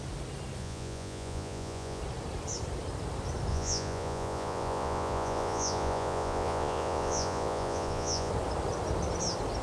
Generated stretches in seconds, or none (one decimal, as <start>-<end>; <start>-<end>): 0.6-2.0; 3.5-8.3